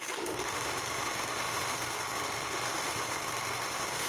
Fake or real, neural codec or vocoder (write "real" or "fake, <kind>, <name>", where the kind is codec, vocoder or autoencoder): fake, autoencoder, DAC-VAE